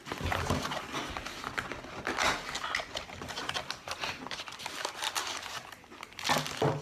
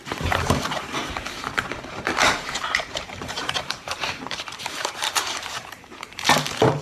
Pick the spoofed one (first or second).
second